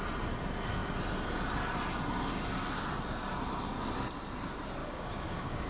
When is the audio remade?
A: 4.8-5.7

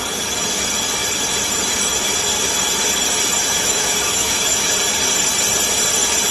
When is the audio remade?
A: 3.4-4.7

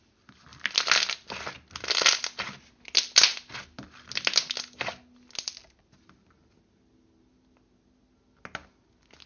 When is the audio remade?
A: none

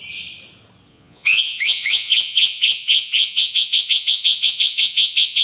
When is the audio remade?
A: 0.9-5.4

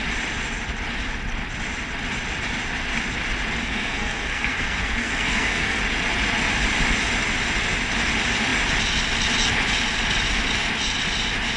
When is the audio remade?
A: 3.6-5.8

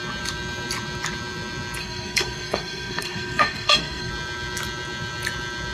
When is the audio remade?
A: 1.8-4.1

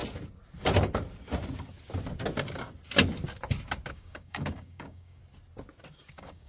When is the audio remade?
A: 3.9-5.2; 6.1-6.5